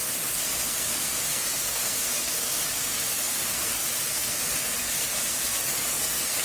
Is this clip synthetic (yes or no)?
yes